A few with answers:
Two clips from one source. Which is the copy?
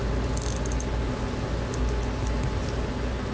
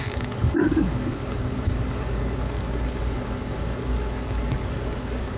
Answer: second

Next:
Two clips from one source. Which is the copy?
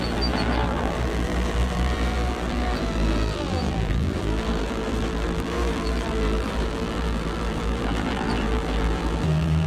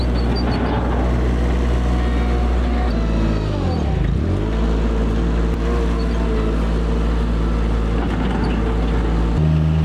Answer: first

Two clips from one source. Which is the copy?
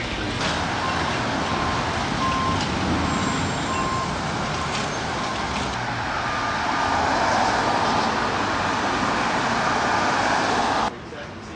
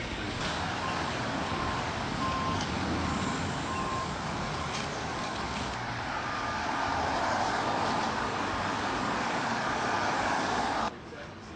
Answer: second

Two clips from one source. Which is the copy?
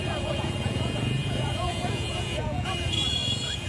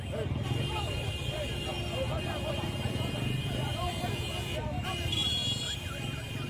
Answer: first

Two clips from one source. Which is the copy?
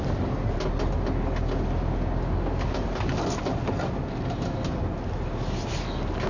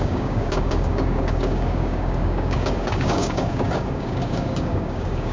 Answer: second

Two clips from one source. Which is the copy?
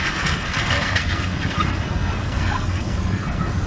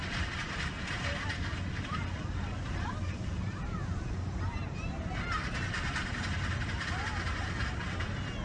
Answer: first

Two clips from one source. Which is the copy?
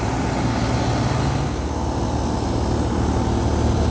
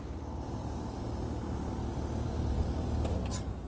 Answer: second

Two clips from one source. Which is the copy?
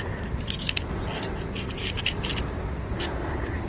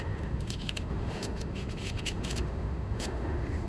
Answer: second